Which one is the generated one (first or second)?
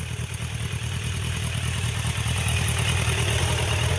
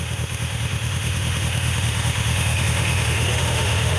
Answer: second